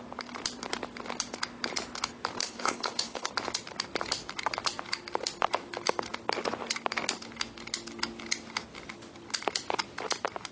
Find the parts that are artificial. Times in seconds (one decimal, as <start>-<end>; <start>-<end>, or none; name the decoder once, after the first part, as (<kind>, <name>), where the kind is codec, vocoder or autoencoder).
2.4-3.3 (codec, HILCodec)